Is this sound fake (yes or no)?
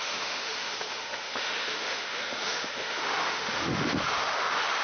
yes